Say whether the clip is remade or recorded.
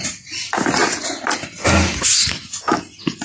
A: recorded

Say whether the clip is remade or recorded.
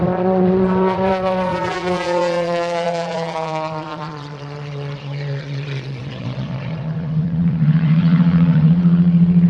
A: remade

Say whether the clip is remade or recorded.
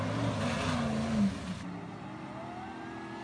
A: recorded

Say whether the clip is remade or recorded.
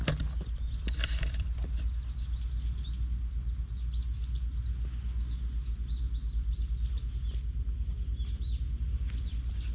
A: recorded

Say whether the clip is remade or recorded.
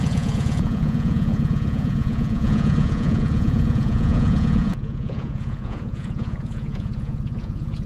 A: remade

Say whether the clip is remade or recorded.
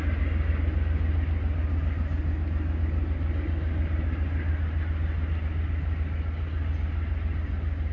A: recorded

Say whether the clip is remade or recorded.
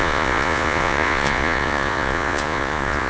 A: remade